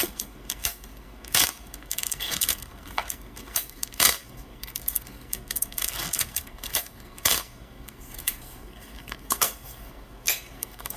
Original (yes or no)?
no